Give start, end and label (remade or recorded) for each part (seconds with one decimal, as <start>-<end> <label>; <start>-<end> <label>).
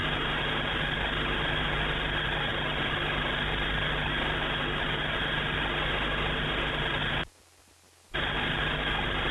0.0-9.3 recorded